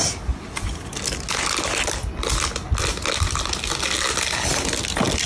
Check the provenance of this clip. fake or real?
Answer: real